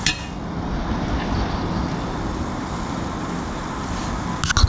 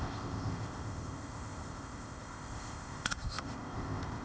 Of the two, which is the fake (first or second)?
second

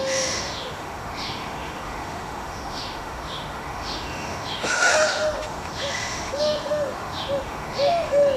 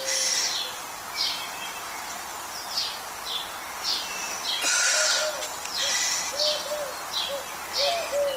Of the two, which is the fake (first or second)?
first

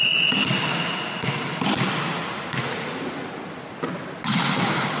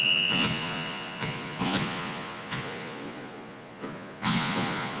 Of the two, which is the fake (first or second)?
second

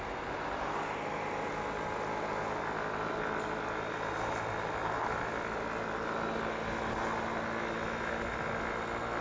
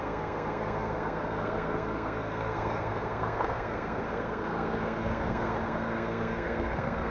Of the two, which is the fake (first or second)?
second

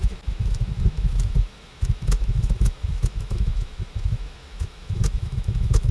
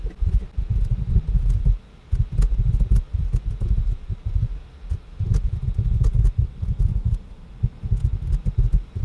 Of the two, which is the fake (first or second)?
first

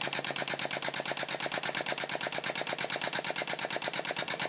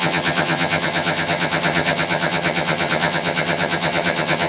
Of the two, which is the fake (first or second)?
second